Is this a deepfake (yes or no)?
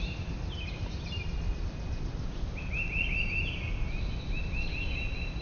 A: no